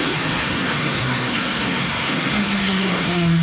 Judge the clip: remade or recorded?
remade